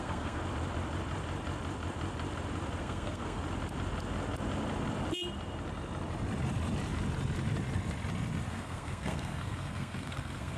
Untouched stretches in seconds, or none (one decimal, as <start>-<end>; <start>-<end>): 0.4-2.8; 3.4-8.5